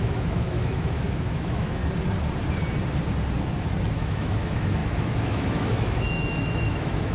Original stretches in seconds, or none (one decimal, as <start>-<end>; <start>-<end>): 1.8-3.9